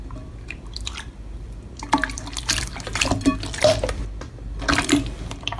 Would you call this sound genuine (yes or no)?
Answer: no